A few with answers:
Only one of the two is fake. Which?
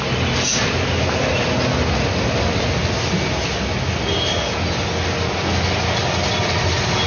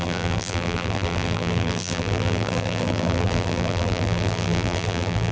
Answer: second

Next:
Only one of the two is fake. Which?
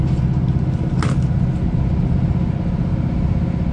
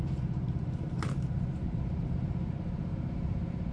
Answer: second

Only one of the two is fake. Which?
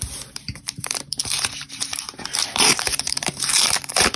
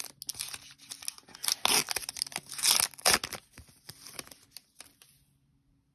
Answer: first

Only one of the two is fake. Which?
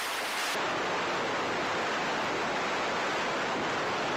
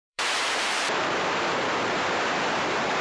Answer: second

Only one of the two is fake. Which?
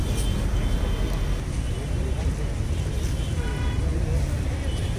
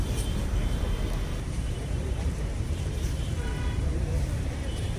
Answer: second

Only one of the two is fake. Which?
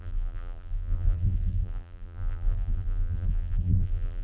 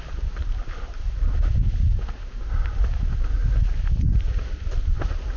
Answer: first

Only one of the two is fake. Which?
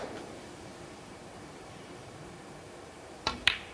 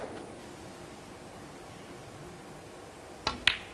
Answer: first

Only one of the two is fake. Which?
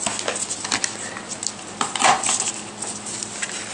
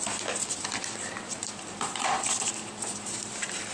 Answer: second